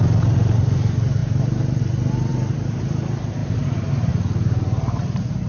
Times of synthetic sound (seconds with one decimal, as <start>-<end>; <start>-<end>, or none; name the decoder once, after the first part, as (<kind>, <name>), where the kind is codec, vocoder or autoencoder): 1.2-1.8 (vocoder, BigVGAN v2); 2.3-2.8